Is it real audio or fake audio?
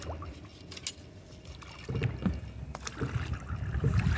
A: real